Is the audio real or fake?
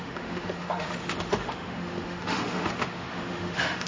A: fake